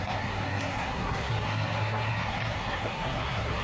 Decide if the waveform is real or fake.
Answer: fake